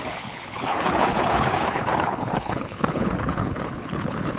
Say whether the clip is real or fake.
fake